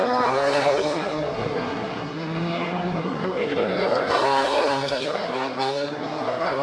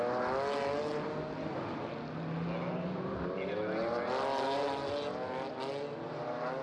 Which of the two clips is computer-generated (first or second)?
first